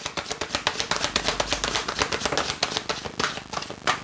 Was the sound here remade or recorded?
recorded